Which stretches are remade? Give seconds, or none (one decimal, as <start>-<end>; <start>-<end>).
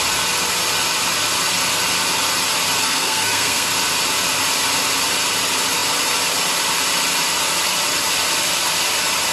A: 2.8-3.7